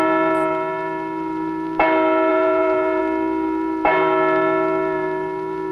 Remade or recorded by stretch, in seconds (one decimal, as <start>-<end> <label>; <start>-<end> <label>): 0.0-2.3 recorded; 2.3-3.0 remade; 3.0-5.7 recorded